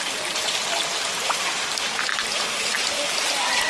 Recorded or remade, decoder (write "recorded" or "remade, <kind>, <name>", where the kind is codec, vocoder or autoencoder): recorded